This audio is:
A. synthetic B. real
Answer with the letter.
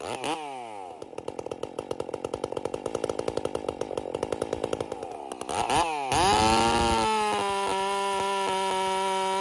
B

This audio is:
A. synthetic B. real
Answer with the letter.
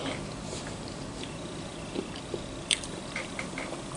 A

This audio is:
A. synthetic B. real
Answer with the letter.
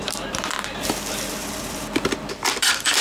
A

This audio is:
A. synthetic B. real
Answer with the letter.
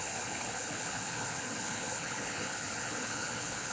A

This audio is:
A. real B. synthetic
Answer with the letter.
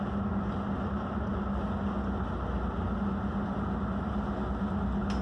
A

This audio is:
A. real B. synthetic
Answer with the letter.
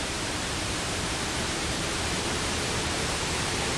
B